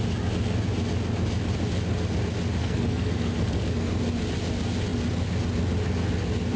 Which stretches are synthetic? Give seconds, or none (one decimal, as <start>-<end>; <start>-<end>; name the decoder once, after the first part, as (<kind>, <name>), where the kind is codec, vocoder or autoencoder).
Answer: 2.6-3.9 (codec, SNAC)